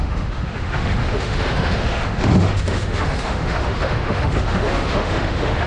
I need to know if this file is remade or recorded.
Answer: remade